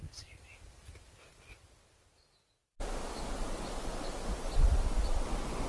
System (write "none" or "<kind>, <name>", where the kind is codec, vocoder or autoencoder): none